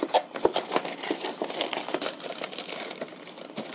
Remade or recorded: recorded